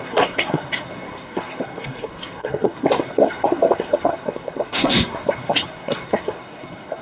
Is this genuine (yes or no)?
no